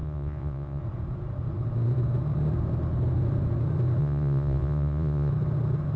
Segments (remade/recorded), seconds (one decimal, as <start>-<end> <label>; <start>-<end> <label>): 0.0-0.8 remade; 0.8-4.0 recorded; 4.0-5.3 remade; 5.3-6.0 recorded

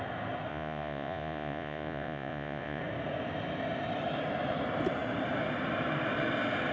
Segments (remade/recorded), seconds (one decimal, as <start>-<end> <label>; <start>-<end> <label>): 0.0-0.5 recorded; 0.5-2.8 remade; 2.8-6.7 recorded

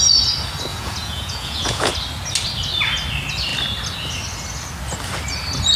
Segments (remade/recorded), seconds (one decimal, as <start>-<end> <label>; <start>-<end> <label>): 0.0-0.7 recorded; 0.7-1.9 remade; 1.9-5.8 recorded